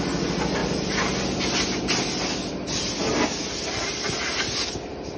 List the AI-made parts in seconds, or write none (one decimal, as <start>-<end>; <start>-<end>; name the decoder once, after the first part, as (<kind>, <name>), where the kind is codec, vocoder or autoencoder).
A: none

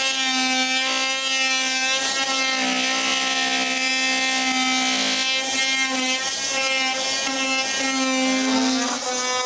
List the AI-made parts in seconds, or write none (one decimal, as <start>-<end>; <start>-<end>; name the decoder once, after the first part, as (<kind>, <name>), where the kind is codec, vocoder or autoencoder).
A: 3.1-3.9 (vocoder, BigVGAN v2)

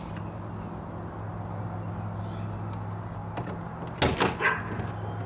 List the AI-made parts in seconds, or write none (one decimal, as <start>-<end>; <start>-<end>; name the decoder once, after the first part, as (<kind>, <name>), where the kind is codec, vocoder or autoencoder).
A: 1.3-2.2 (vocoder, BigVGAN v2)